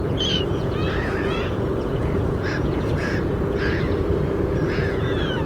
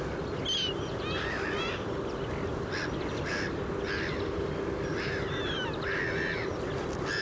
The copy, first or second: first